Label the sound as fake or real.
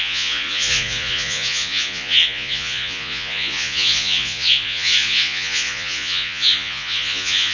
fake